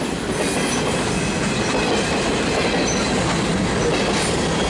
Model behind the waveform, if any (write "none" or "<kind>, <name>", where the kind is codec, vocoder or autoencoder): none